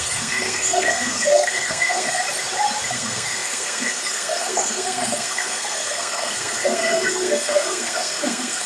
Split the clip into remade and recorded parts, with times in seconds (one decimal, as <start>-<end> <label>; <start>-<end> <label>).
0.0-2.2 remade; 2.2-2.9 recorded; 2.9-8.7 remade